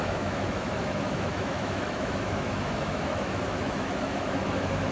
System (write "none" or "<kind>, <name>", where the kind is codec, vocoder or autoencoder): autoencoder, DAC-VAE